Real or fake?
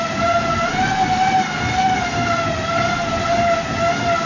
real